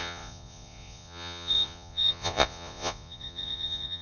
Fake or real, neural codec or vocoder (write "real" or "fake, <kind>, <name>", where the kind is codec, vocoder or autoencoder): fake, vocoder, Vocos